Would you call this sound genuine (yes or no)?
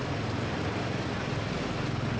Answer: yes